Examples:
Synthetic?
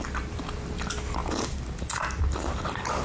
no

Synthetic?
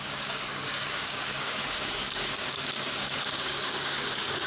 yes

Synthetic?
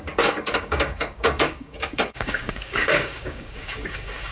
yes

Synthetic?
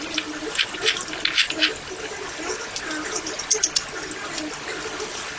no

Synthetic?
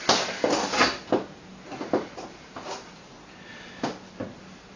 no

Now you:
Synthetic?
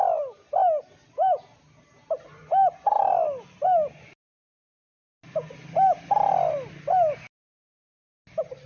no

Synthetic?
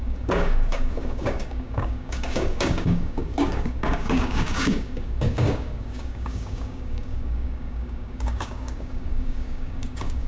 yes